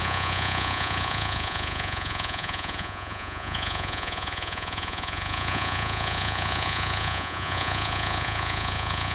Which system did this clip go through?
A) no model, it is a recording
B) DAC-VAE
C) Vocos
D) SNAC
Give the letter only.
C